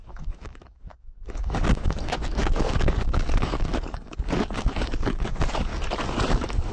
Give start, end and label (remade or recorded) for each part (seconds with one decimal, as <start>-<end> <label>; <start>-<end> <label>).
0.0-5.7 remade; 5.7-6.3 recorded; 6.3-6.7 remade